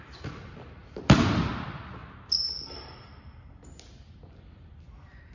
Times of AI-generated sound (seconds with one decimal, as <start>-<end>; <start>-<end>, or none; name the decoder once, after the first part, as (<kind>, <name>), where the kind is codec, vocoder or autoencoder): 0.8-1.5 (vocoder, BigVGAN v2)